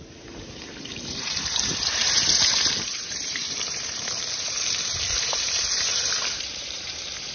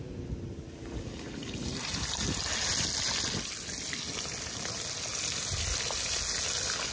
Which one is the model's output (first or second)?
first